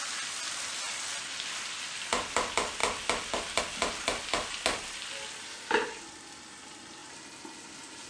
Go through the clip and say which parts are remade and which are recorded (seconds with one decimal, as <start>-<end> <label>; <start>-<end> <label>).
0.0-8.1 recorded